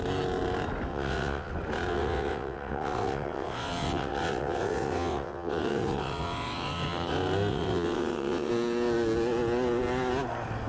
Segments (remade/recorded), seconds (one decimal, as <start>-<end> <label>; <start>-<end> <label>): 0.0-0.9 recorded; 0.9-1.5 remade; 1.5-1.9 recorded; 1.9-7.1 remade; 7.1-7.5 recorded; 7.5-8.5 remade; 8.5-10.7 recorded